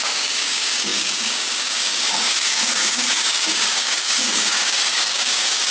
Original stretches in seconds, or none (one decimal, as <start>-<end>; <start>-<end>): none